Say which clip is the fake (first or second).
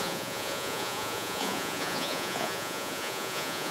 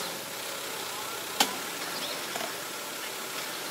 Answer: first